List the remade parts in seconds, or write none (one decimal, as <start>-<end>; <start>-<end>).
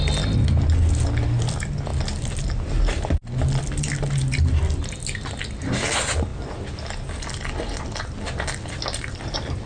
none